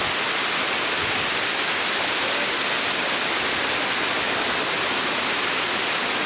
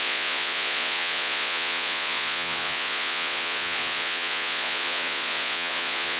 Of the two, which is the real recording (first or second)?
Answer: first